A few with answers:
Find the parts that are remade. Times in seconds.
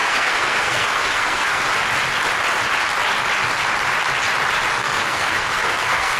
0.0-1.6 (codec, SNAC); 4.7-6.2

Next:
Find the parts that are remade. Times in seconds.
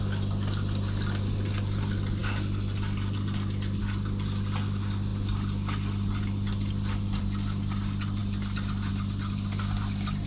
none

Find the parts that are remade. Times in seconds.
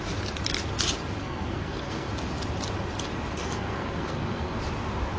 1.2-2.1 (codec, SNAC); 3.4-4.6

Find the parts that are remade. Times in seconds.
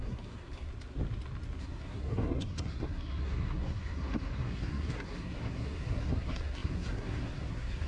0.0-0.7 (codec, SNAC); 1.6-7.9